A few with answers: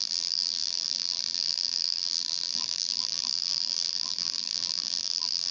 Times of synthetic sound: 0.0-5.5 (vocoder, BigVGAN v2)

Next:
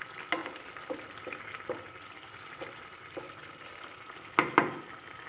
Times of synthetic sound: 0.4-3.6 (vocoder, BigVGAN v2)

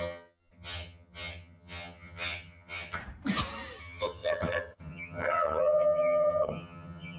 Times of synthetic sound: 0.0-3.0 (vocoder, HiFi-GAN); 3.8-7.2